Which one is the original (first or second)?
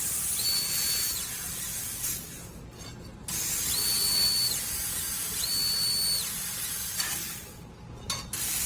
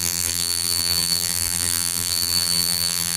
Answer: first